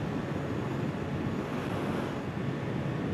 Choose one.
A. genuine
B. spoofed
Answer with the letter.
A